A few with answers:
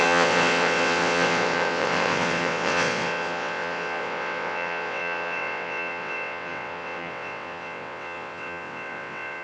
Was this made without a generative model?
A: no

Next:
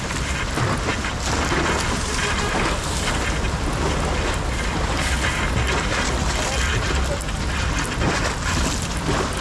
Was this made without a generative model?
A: yes